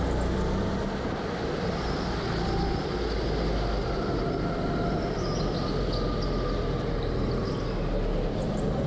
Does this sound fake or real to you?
real